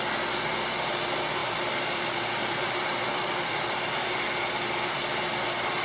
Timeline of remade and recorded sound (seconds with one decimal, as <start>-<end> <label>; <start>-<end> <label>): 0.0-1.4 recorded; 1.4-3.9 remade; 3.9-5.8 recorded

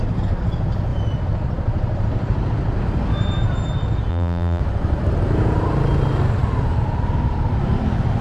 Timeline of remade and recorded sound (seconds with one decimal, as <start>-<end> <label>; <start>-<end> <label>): 0.0-4.1 recorded; 4.1-4.6 remade; 4.6-8.2 recorded

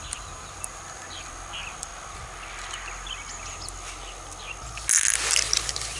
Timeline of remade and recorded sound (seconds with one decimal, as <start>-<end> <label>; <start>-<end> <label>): 0.0-1.9 remade; 1.9-5.1 recorded; 5.1-6.0 remade

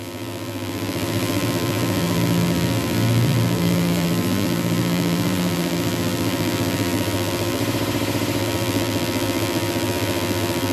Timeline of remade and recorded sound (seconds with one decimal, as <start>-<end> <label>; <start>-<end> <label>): 0.0-7.6 remade; 7.6-8.4 recorded; 8.4-10.7 remade

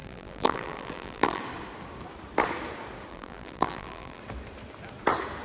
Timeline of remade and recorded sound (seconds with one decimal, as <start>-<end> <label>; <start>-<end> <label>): 0.0-1.4 remade; 1.4-3.1 recorded; 3.1-4.2 remade; 4.2-5.4 recorded